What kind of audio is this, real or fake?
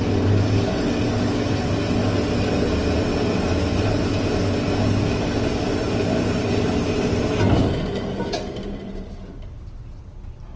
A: real